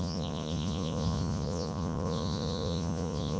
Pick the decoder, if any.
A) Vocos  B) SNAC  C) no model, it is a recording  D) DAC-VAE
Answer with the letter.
A